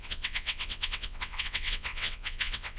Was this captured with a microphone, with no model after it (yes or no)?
no